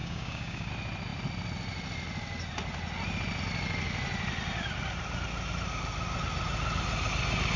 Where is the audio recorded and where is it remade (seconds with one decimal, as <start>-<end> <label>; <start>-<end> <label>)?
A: 0.0-0.7 remade; 0.7-7.6 recorded